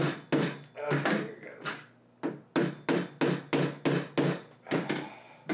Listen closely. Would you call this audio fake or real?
real